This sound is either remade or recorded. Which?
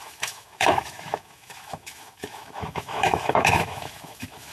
remade